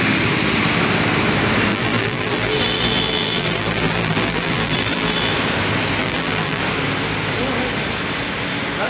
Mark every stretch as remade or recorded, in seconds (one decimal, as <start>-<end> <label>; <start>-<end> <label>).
0.0-1.7 recorded; 1.7-5.3 remade; 5.3-6.0 recorded; 6.0-6.6 remade; 6.6-8.9 recorded